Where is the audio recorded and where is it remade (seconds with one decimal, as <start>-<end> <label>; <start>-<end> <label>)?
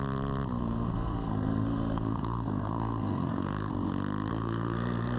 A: 0.0-0.6 recorded; 0.6-3.7 remade; 3.7-4.3 recorded; 4.3-5.2 remade